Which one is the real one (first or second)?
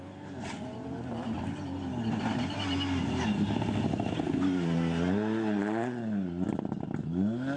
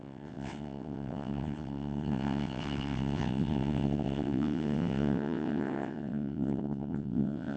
first